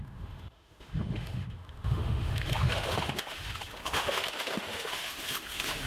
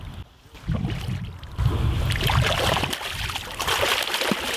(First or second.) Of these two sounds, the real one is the second